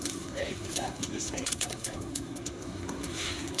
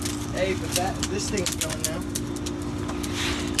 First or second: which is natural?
second